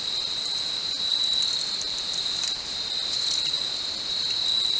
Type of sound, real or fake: real